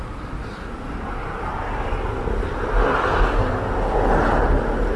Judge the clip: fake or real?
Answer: real